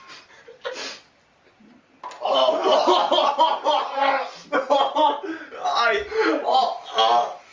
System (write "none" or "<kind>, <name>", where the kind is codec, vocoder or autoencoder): none